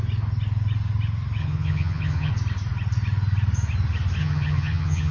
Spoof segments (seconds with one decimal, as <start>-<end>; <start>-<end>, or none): 1.4-2.3; 4.2-5.1